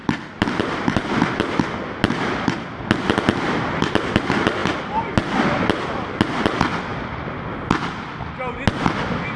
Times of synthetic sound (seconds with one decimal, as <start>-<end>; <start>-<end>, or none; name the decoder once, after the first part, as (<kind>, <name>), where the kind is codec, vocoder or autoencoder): 0.0-1.8 (vocoder, BigVGAN v2)